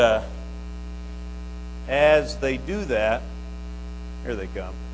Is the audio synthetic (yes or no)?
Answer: no